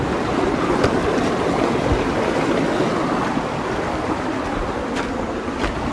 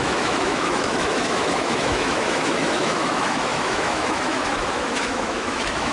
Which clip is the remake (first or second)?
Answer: second